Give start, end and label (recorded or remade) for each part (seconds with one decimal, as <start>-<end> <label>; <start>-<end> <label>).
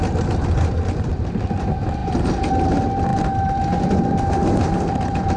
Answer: 0.0-2.0 recorded; 2.0-2.5 remade; 2.5-5.4 recorded